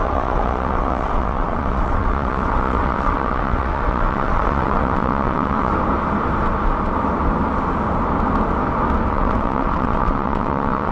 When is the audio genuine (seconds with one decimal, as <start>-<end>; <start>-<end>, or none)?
5.7-9.1